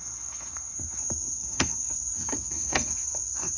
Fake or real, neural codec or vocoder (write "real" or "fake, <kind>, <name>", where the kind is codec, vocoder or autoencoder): fake, codec, SNAC